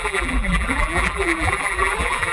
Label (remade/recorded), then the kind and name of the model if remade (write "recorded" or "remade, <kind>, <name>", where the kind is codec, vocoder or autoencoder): remade, vocoder, BigVGAN v2